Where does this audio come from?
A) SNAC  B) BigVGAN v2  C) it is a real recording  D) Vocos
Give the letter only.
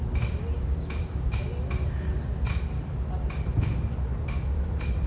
C